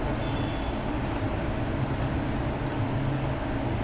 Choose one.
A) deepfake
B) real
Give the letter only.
B